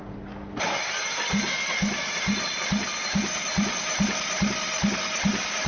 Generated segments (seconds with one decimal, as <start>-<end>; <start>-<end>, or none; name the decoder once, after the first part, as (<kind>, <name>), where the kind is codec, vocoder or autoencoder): none